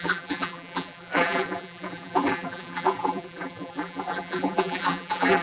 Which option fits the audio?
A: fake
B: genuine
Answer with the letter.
A